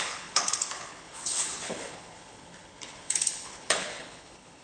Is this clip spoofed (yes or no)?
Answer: yes